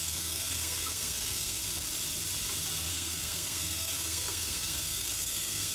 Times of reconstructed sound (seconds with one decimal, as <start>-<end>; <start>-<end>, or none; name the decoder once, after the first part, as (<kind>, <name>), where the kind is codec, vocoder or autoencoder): 0.0-1.6 (codec, SNAC); 2.9-5.7